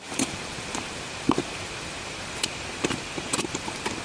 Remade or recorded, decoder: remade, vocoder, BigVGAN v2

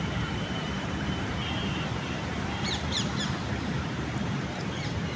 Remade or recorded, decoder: remade, vocoder, BigVGAN v2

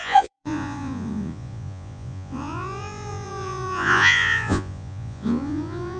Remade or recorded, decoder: remade, vocoder, Vocos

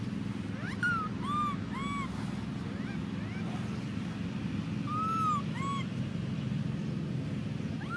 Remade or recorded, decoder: recorded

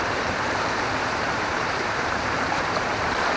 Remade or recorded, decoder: remade, vocoder, BigVGAN v2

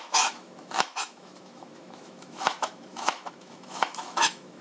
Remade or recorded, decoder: remade, autoencoder, DAC-VAE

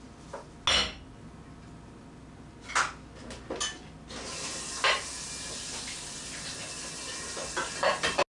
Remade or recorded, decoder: recorded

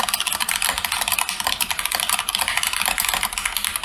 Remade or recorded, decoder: recorded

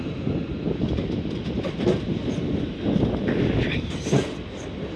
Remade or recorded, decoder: recorded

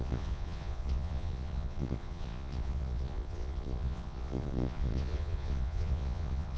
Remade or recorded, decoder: remade, vocoder, Vocos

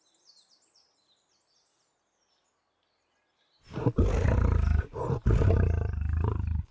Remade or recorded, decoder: recorded